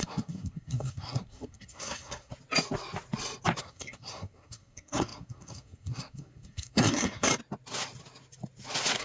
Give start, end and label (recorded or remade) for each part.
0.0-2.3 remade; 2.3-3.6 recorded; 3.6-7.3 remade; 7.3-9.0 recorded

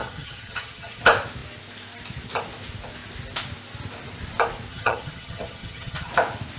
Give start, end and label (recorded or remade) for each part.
0.0-1.0 remade; 1.0-4.7 recorded; 4.7-6.1 remade; 6.1-6.6 recorded

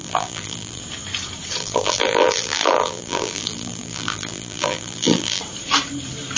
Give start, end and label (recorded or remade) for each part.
0.0-0.8 remade; 0.8-1.6 recorded; 1.6-5.4 remade; 5.4-6.4 recorded

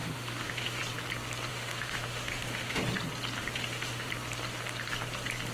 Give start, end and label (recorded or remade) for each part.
0.0-0.8 remade; 0.8-1.5 recorded; 1.5-2.8 remade; 2.8-3.4 recorded; 3.4-4.1 remade; 4.1-5.5 recorded

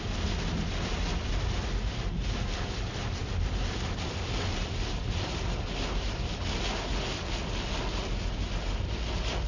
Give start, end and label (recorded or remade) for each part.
0.0-9.5 recorded

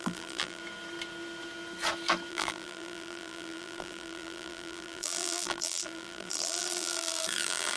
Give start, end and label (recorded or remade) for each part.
0.0-0.6 remade; 0.6-2.3 recorded; 2.3-7.8 remade

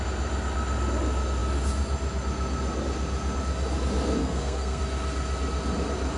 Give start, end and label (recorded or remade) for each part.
0.0-4.2 recorded; 4.2-4.8 remade; 4.8-6.2 recorded